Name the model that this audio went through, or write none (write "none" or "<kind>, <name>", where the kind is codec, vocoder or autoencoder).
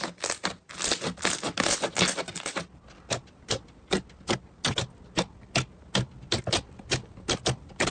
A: none